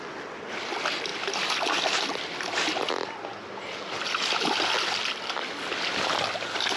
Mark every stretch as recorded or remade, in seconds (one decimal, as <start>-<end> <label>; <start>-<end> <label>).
0.0-6.8 recorded